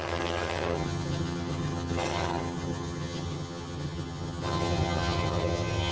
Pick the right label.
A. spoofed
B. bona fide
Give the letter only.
A